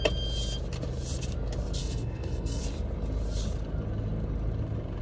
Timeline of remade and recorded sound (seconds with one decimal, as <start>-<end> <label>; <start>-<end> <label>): 0.0-1.8 recorded; 1.8-2.6 remade; 2.6-5.0 recorded